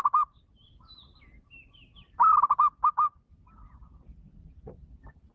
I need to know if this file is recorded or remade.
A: remade